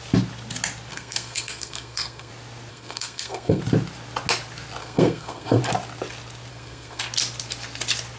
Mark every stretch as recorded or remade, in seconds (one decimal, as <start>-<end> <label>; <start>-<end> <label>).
0.0-0.9 recorded; 0.9-2.3 remade; 2.3-2.7 recorded; 2.7-3.6 remade; 3.6-4.8 recorded; 4.8-5.6 remade; 5.6-6.5 recorded; 6.5-7.0 remade; 7.0-8.2 recorded